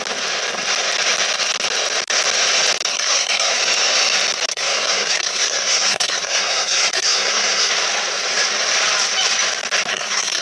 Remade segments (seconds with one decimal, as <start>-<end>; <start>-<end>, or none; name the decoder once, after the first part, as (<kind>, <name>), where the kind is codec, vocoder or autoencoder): 2.9-3.6 (codec, SNAC); 4.5-7.7; 9.9-10.4